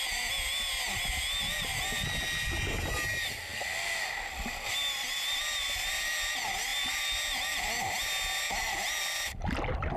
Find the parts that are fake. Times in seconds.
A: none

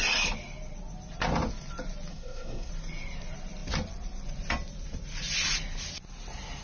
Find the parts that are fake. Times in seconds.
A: 2.1-2.7 (codec, SNAC)

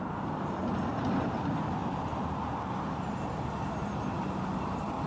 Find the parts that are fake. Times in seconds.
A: none

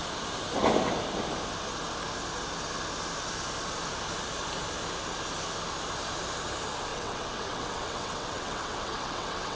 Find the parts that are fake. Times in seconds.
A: 6.9-9.6 (vocoder, WaveNeXt)

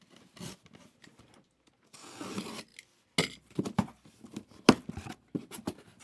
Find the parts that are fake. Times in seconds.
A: none

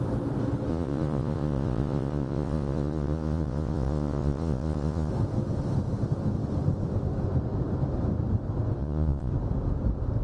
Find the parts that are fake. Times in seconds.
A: 0.7-5.1 (vocoder, Vocos); 8.8-9.3

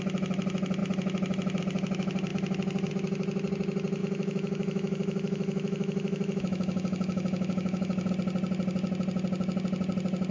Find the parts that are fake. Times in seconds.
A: 4.0-8.1 (autoencoder, DAC-VAE)